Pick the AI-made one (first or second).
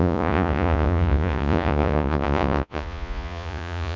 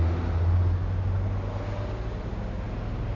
first